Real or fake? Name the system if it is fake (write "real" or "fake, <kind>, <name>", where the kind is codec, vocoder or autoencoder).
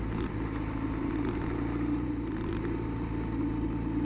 real